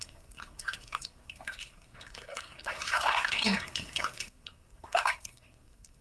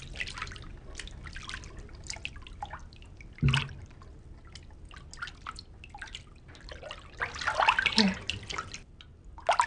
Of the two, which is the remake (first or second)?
first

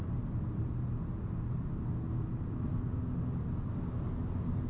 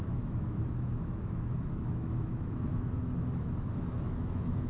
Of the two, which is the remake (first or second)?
second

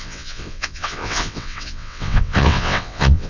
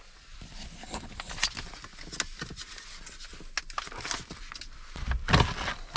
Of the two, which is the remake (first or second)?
first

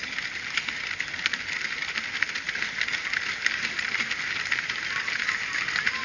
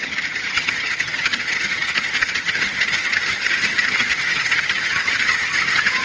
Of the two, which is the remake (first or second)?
second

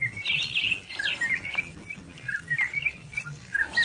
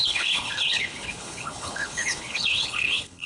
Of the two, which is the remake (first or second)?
second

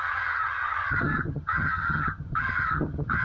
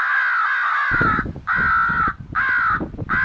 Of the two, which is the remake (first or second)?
first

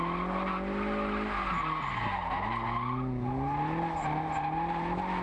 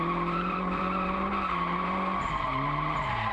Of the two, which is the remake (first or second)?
second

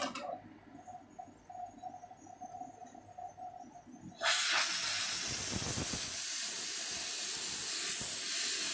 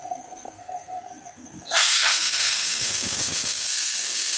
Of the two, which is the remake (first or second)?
second